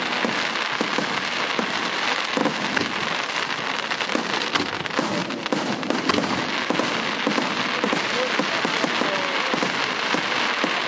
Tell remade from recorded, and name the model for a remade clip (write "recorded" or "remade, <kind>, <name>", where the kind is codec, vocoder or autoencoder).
recorded